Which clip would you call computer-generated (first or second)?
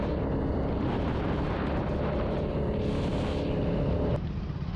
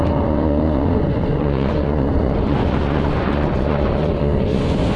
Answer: second